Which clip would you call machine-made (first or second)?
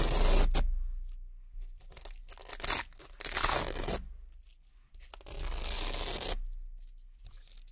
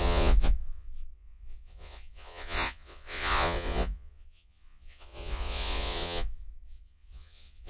second